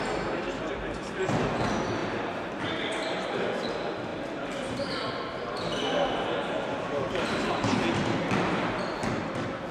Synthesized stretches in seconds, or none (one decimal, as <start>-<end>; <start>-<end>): 4.1-5.1; 9.0-9.7